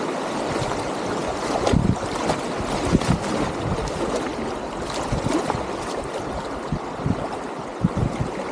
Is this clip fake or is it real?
real